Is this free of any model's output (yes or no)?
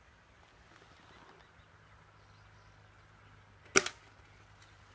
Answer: yes